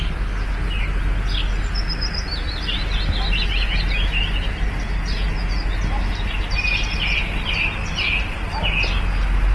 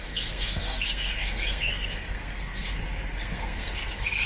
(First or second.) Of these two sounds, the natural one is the first